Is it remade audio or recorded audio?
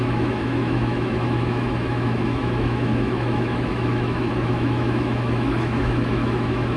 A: remade